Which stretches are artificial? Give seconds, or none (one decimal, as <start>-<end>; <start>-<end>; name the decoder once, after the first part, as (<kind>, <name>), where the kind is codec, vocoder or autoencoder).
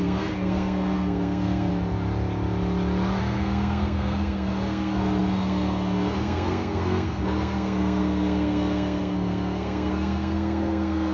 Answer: 0.0-1.7 (codec, SNAC); 3.2-11.1